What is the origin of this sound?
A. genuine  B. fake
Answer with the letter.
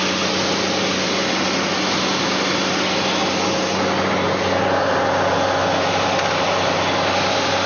A